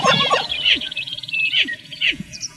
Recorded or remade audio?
remade